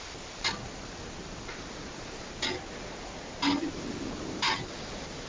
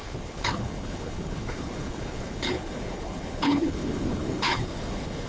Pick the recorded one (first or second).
first